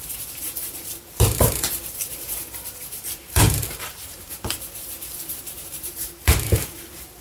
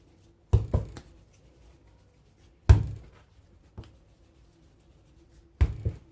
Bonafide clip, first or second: second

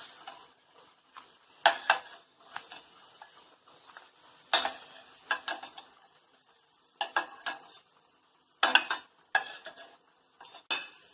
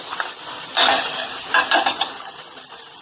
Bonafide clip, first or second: first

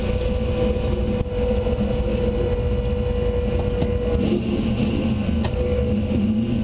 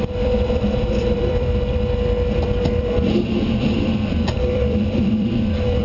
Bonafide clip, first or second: first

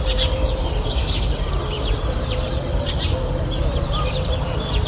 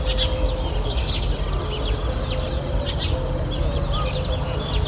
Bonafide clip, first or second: second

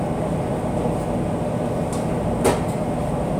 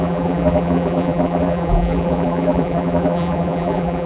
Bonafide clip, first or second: first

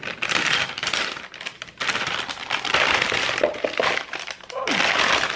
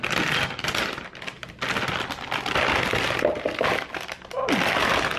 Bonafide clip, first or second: second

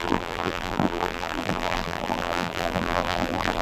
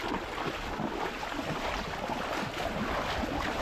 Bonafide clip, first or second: second